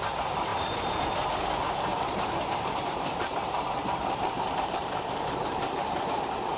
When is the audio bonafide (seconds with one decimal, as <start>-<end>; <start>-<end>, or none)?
0.0-0.5; 1.0-1.9; 5.9-6.6